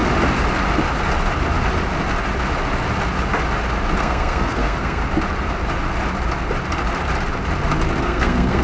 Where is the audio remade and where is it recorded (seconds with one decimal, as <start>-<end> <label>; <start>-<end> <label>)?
0.0-4.0 recorded; 4.0-5.0 remade; 5.0-8.0 recorded; 8.0-8.6 remade